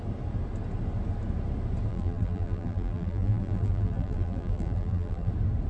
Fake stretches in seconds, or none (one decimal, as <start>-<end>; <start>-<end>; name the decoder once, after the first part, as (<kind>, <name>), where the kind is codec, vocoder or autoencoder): 1.9-5.3 (vocoder, BigVGAN v2)